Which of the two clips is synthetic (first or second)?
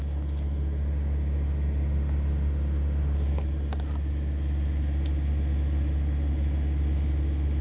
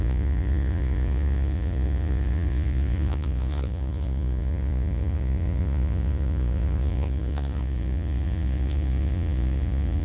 second